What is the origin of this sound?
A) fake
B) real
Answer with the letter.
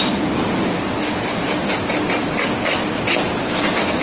B